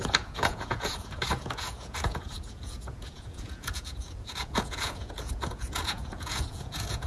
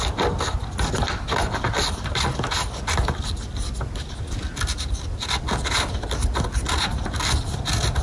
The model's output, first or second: first